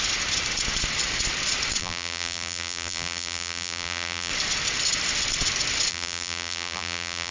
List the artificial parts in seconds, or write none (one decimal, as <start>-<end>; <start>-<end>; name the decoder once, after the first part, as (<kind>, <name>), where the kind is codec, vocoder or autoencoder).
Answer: 1.8-4.3 (vocoder, BigVGAN v2); 5.9-7.3

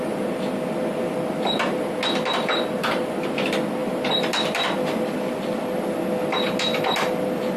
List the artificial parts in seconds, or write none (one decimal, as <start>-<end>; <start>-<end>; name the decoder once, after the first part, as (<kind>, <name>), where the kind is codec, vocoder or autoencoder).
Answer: 3.8-5.0 (vocoder, BigVGAN v2)

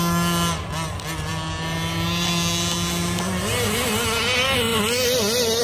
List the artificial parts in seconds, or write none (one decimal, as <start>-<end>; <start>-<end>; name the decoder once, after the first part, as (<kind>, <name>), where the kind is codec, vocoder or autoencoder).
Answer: 4.7-5.6 (vocoder, BigVGAN v2)

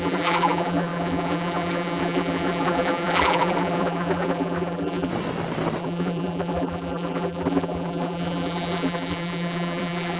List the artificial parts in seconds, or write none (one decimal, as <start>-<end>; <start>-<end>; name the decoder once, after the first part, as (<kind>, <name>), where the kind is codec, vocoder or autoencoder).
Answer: 0.0-5.1 (vocoder, BigVGAN v2); 5.8-10.2